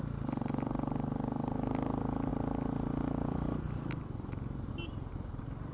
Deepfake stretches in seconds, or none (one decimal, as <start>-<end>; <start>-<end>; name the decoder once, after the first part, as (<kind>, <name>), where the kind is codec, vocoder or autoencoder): none